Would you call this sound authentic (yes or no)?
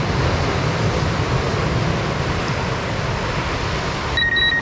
yes